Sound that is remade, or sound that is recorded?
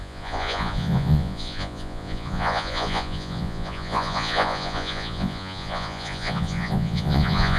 remade